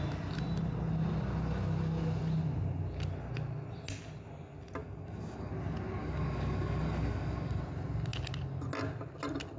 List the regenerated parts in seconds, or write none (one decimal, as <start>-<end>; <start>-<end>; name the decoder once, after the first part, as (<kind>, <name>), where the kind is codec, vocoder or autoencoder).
4.8-5.5 (codec, DAC); 6.0-7.6